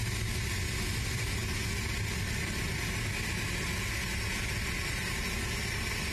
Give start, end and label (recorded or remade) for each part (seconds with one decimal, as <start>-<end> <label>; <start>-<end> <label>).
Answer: 0.0-6.1 recorded